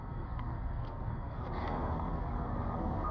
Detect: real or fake fake